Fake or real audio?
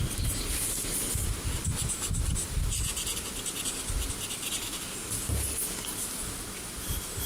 real